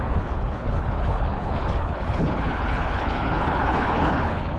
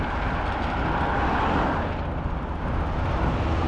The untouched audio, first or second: second